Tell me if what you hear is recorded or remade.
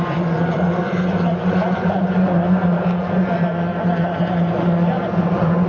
remade